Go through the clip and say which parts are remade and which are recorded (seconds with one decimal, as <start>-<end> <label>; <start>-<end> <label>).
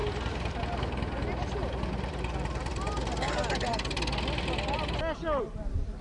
0.0-0.6 remade; 0.6-1.6 recorded; 1.6-3.0 remade; 3.0-6.0 recorded